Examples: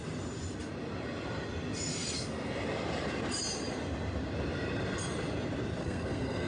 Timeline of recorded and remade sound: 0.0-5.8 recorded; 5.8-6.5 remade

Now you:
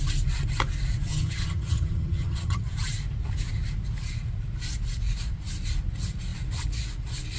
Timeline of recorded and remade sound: 0.0-1.1 recorded; 1.1-2.6 remade; 2.6-7.4 recorded

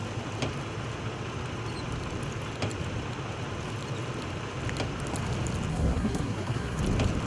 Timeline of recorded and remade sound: 0.0-5.7 recorded; 5.7-6.8 remade; 6.8-7.3 recorded

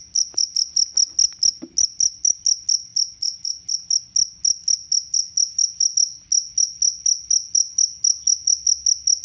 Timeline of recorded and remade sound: 0.0-9.2 recorded